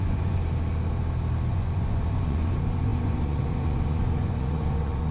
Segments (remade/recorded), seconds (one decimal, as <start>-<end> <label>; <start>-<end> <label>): 0.0-0.4 remade; 0.4-1.5 recorded; 1.5-5.1 remade